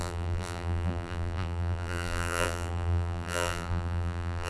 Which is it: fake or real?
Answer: fake